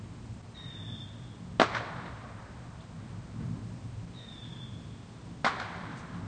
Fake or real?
real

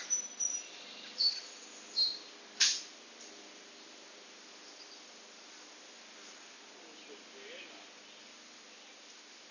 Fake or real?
real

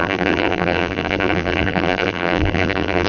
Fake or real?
fake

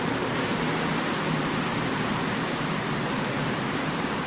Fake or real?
fake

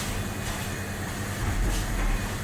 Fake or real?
fake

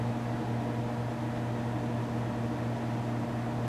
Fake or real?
real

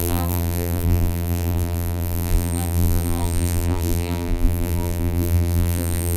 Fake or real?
fake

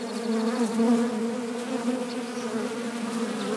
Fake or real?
real